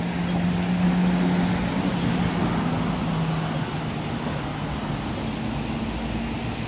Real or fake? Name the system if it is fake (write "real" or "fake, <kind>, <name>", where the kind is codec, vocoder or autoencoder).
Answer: real